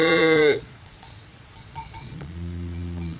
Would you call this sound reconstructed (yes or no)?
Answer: yes